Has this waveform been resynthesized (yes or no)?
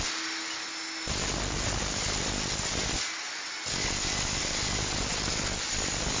no